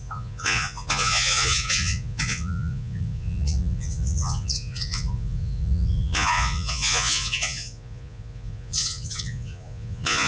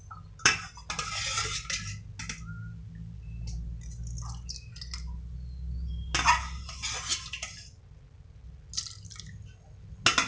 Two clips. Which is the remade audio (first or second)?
first